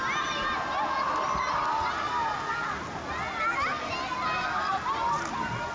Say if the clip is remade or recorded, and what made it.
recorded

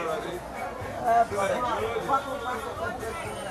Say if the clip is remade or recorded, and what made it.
recorded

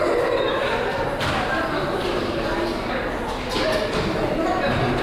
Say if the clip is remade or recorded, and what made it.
recorded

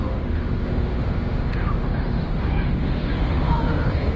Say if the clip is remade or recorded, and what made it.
remade, autoencoder, DAC-VAE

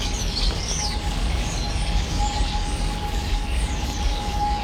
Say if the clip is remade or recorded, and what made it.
remade, codec, DAC